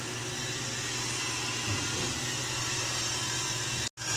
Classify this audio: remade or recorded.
recorded